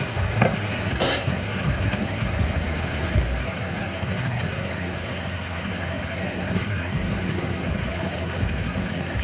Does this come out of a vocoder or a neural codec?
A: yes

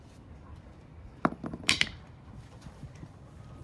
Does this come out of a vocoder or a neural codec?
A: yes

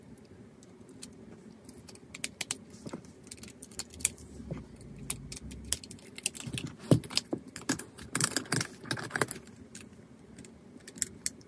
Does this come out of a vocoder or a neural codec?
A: no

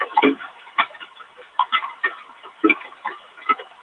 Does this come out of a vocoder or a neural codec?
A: yes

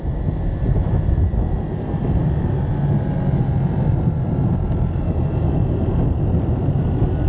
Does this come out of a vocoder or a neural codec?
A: no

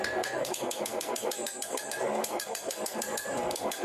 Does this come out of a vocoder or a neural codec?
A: yes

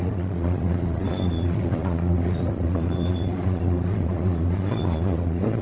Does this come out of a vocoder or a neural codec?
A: yes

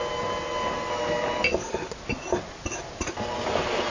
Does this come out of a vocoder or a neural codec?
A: no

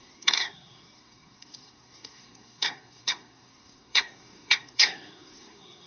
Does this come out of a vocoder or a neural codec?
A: yes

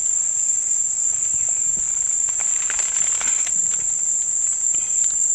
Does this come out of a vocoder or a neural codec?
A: no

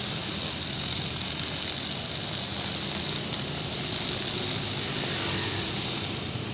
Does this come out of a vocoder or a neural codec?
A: no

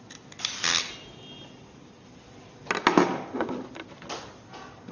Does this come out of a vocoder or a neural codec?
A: no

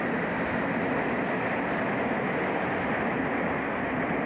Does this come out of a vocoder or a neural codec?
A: no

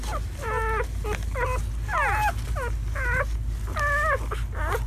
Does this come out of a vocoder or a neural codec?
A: no